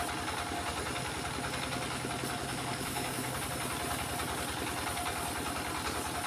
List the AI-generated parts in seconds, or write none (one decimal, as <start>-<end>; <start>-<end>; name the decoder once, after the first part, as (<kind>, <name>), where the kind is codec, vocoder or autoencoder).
2.4-3.4 (codec, DAC)